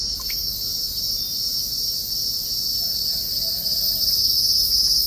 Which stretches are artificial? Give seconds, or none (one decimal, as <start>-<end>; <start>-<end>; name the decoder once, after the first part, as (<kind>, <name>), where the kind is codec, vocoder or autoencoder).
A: none